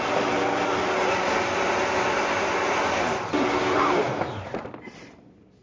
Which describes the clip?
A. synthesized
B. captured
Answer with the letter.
B